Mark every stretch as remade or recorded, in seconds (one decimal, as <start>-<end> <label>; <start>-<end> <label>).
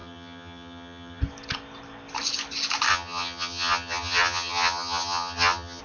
0.0-1.2 remade; 1.2-2.9 recorded; 2.9-5.8 remade